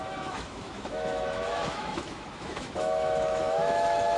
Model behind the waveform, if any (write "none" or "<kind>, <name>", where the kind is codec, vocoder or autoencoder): autoencoder, DAC-VAE